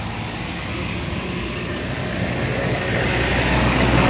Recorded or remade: remade